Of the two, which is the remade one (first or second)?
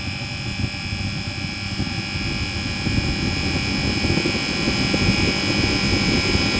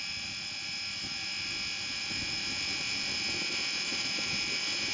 second